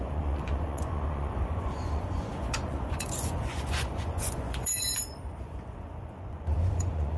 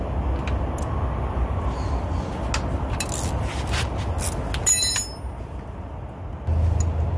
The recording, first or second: second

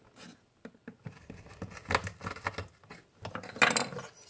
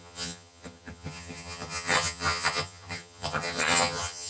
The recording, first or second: first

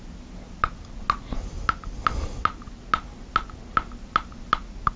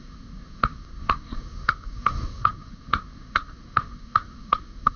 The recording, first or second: first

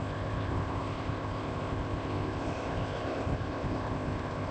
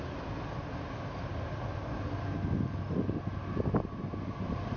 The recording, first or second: second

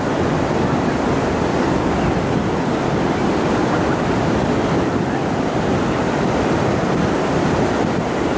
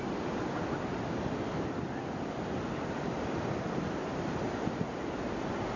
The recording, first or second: second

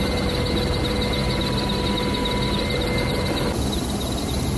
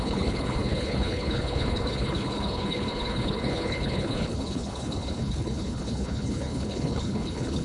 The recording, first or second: first